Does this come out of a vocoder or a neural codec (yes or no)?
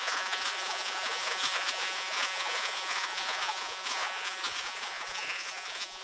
yes